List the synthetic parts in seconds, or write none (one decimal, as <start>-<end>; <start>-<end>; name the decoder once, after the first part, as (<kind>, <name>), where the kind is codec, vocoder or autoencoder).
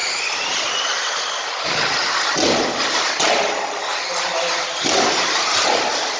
none